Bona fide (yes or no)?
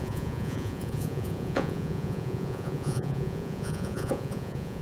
no